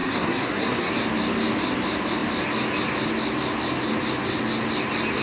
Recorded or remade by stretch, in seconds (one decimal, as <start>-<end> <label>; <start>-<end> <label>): 0.0-0.9 remade; 0.9-5.2 recorded